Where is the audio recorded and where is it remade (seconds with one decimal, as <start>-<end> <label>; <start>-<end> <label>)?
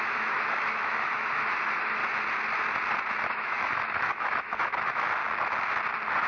0.0-2.0 remade; 2.0-3.3 recorded; 3.3-5.2 remade; 5.2-6.3 recorded